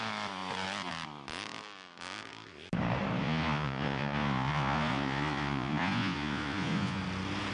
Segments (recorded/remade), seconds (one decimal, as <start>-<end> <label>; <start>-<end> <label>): 0.0-3.2 recorded; 3.2-7.0 remade; 7.0-7.5 recorded